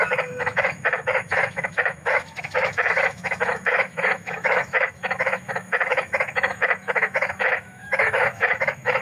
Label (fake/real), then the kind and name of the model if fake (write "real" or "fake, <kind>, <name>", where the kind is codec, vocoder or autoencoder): fake, autoencoder, DAC-VAE